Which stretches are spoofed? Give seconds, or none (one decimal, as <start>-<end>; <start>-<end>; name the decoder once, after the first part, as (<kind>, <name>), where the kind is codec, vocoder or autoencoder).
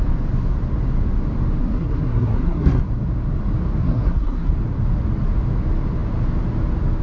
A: 1.6-2.9 (codec, SNAC); 3.8-4.5